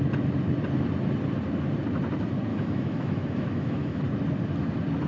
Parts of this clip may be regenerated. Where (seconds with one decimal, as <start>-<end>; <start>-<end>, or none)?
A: 2.5-4.0